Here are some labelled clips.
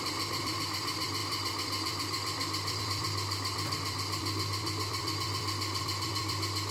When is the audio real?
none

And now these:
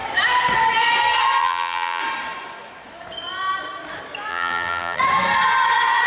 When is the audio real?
0.0-1.4; 2.0-4.3; 5.0-6.1

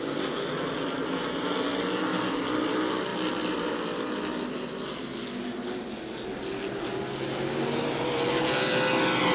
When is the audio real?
0.0-9.3